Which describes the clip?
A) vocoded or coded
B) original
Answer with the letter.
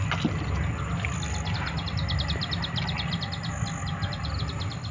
B